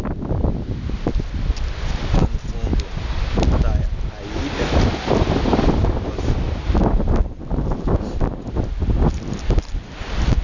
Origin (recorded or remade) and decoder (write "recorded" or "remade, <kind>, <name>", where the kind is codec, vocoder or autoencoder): recorded